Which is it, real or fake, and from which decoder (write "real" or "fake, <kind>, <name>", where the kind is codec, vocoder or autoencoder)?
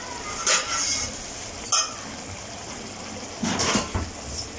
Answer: real